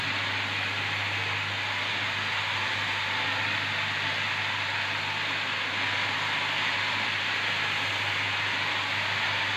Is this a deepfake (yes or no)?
no